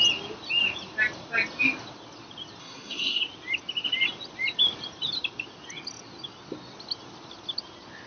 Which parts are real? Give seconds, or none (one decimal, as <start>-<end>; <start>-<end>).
0.0-2.6; 3.2-8.1